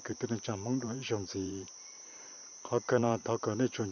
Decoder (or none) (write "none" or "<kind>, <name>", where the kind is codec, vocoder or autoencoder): vocoder, BigVGAN v2